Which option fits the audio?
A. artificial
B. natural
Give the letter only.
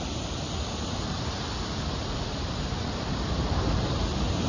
B